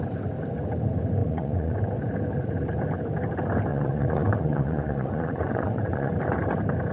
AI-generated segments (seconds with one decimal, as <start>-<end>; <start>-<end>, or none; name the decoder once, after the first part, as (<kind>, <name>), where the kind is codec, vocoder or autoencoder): 1.2-1.8 (vocoder, Vocos); 3.7-6.1